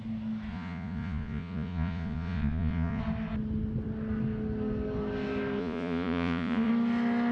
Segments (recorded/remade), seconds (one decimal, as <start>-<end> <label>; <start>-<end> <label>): 0.0-0.5 recorded; 0.5-3.0 remade; 3.0-5.6 recorded; 5.6-6.7 remade; 6.7-7.3 recorded